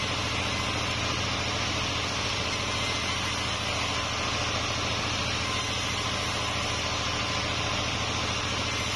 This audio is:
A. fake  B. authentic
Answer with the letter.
B